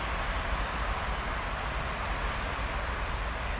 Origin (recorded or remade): recorded